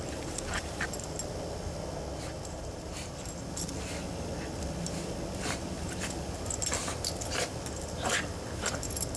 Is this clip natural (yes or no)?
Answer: yes